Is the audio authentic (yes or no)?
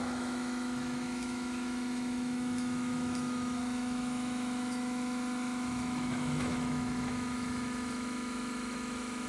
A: no